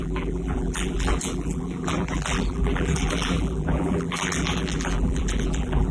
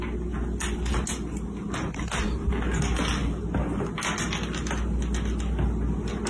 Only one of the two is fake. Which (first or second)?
first